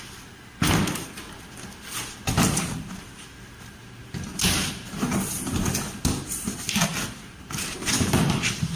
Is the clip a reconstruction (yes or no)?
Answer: no